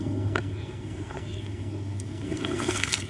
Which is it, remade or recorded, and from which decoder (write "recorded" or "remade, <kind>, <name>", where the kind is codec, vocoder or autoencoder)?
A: remade, codec, SNAC